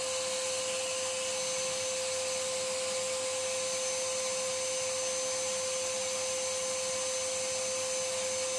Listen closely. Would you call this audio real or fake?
real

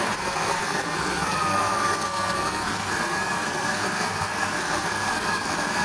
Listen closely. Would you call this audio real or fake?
fake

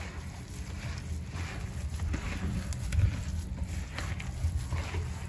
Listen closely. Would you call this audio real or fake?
real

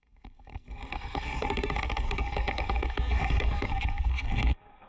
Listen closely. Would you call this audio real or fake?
fake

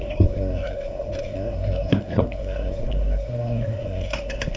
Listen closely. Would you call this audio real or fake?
fake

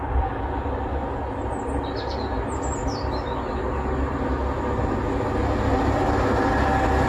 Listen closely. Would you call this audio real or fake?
real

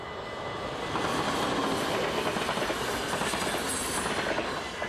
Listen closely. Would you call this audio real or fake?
real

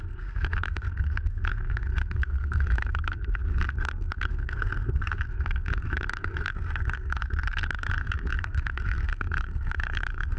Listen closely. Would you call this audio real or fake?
fake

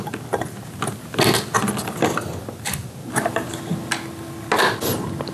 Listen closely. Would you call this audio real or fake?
real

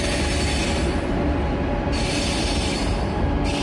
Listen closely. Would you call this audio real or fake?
real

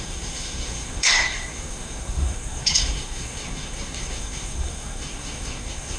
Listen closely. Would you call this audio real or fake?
fake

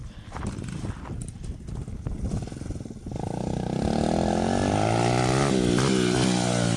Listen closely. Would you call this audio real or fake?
real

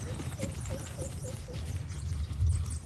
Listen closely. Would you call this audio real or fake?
real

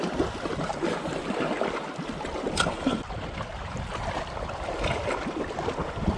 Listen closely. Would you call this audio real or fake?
real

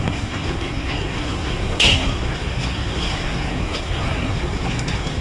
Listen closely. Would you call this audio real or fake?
fake